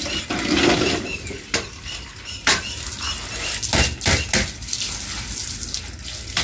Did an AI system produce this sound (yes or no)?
no